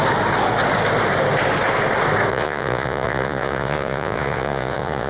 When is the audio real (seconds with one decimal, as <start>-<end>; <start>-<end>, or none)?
0.0-2.3